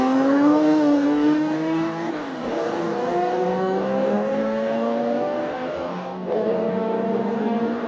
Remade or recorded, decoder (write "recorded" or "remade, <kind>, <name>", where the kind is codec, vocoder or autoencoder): remade, codec, DAC